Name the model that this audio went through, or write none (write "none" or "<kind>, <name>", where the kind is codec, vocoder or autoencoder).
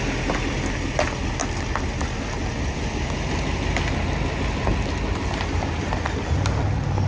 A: none